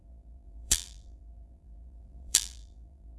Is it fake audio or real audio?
fake